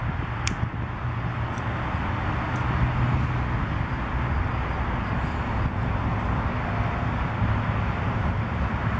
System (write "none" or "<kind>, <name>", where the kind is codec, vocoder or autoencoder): none